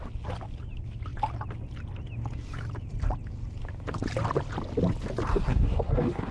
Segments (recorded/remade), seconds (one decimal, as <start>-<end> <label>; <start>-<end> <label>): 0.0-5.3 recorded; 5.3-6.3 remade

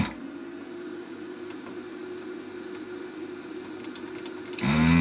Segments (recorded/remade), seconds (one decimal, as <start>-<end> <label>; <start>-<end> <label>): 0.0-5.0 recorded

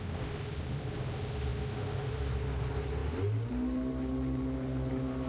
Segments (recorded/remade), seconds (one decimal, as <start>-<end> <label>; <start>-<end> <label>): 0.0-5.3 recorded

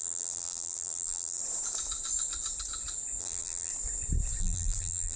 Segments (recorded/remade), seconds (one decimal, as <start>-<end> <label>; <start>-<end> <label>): 0.0-1.4 remade; 1.4-3.2 recorded; 3.2-3.7 remade; 3.7-4.4 recorded; 4.4-5.2 remade

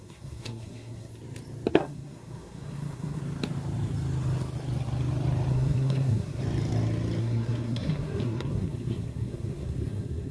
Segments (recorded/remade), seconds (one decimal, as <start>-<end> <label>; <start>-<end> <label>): 0.0-1.1 remade; 1.1-1.7 recorded; 1.7-3.2 remade; 3.2-5.5 recorded; 5.5-6.4 remade; 6.4-7.2 recorded; 7.2-10.3 remade

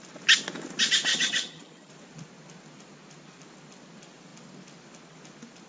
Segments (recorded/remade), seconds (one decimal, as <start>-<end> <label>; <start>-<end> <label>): 0.0-1.1 recorded; 1.1-1.9 remade; 1.9-5.7 recorded

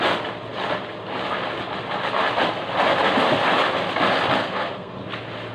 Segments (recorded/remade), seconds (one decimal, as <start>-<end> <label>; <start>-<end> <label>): 0.0-4.4 recorded; 4.4-4.9 remade; 4.9-5.5 recorded